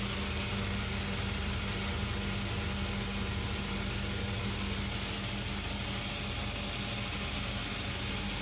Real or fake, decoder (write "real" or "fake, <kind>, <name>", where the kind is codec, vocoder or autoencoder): real